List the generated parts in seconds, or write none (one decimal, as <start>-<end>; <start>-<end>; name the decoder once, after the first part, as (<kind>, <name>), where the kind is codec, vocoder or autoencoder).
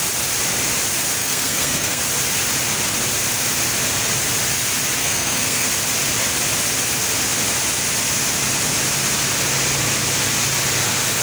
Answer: 1.2-2.0 (codec, SNAC); 5.0-5.7